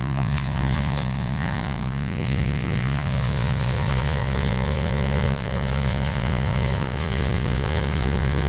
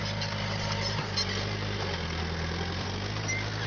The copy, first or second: first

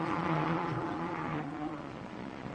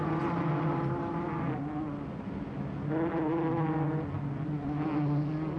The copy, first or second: first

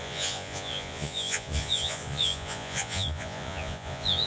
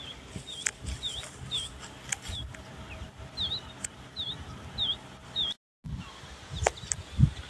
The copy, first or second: first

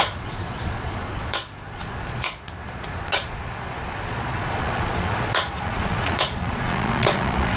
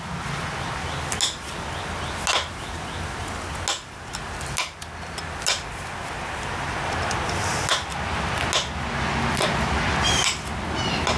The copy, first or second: first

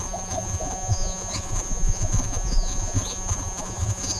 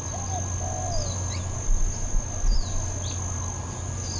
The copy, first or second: first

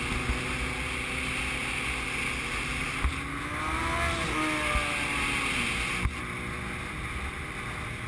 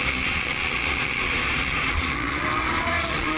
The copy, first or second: second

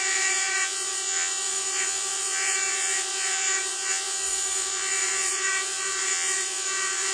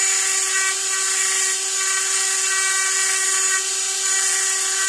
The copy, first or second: first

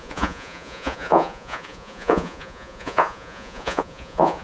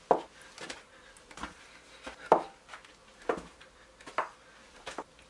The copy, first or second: first